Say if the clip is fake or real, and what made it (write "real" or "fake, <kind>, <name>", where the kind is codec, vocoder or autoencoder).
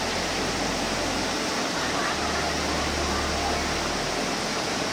real